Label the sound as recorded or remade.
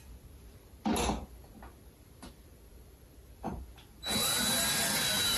remade